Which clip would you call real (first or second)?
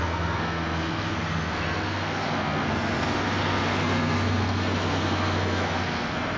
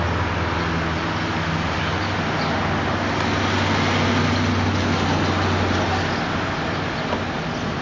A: second